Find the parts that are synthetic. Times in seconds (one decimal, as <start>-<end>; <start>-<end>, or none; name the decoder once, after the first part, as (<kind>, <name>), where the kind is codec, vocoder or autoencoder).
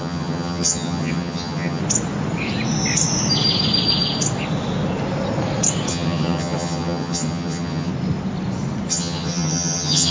0.0-1.8 (vocoder, HiFi-GAN); 5.9-7.9; 8.9-10.1